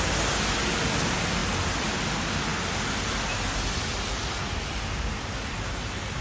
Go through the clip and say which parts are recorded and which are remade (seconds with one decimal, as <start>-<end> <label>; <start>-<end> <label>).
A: 0.0-6.2 recorded